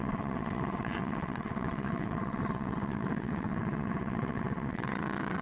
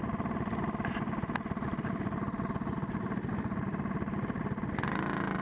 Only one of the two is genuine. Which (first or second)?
second